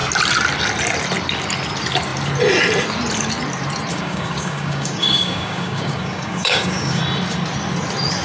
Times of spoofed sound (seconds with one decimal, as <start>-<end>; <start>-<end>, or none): 3.9-7.0